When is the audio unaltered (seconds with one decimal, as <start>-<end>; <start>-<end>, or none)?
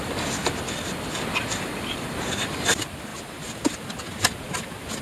0.0-3.1; 3.8-5.0